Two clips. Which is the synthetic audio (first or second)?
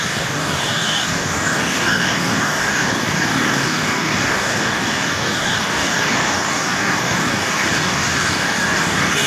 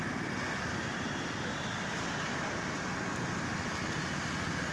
first